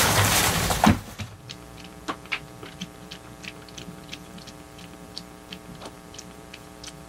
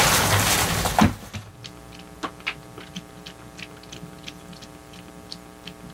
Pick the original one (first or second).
second